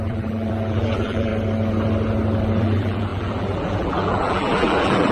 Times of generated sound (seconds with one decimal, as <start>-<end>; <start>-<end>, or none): 0.0-1.3; 2.6-5.1